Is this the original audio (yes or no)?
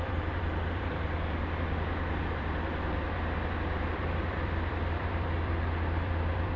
no